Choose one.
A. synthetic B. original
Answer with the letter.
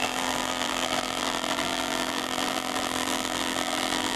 A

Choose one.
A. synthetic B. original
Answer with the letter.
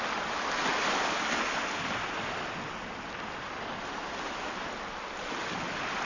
B